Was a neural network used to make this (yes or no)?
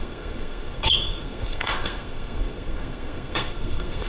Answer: yes